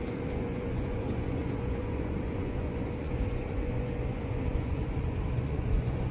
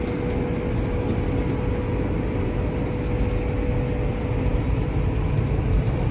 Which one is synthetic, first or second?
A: first